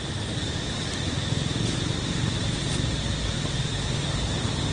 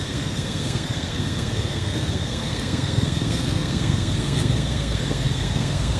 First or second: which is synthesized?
second